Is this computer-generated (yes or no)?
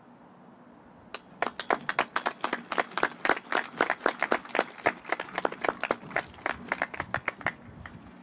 no